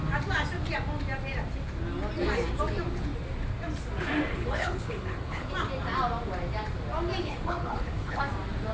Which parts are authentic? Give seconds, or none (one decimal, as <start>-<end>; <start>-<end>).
0.0-4.3; 5.5-7.2; 8.2-8.7